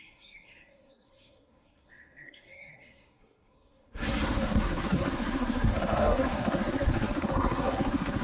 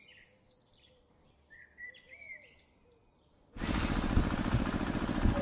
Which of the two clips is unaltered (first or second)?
second